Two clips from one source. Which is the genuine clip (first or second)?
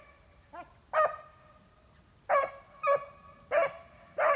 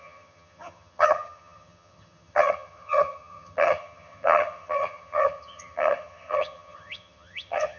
first